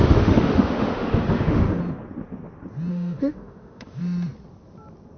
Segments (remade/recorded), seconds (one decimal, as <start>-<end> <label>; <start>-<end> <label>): 0.0-1.8 remade; 1.8-2.9 recorded; 2.9-4.0 remade; 4.0-5.2 recorded